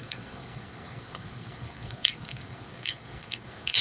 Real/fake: fake